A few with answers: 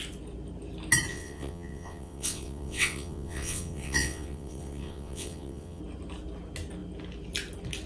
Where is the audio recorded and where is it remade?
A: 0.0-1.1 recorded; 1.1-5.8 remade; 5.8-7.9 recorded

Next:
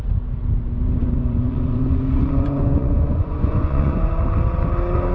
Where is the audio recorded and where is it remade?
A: 0.0-1.0 recorded; 1.0-4.1 remade; 4.1-5.1 recorded

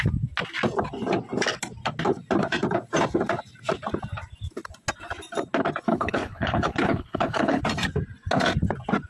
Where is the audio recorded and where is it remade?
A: 0.0-5.9 recorded; 5.9-7.6 remade; 7.6-9.1 recorded

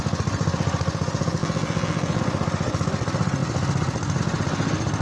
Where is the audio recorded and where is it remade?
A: 0.0-1.4 recorded; 1.4-2.2 remade; 2.2-5.0 recorded

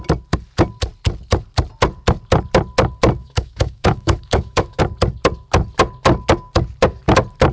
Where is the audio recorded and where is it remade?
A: 0.0-3.2 recorded; 3.2-4.8 remade; 4.8-7.5 recorded

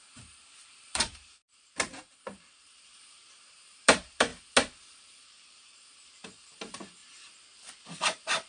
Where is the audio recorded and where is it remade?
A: 0.0-4.3 remade; 4.3-4.8 recorded; 4.8-7.0 remade; 7.0-8.0 recorded; 8.0-8.5 remade